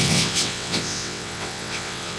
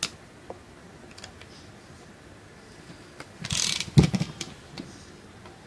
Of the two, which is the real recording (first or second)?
second